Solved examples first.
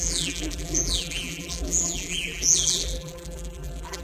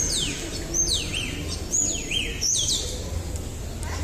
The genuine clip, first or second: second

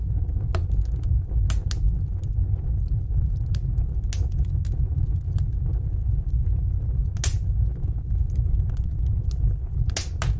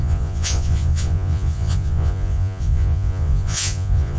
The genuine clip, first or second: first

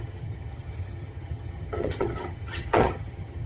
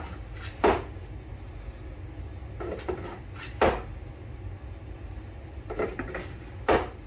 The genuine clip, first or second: second